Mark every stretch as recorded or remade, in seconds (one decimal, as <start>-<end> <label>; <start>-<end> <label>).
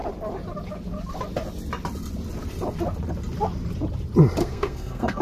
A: 0.0-4.4 recorded; 4.4-5.2 remade